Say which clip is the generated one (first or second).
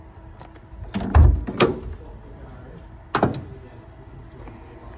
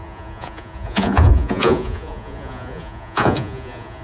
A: second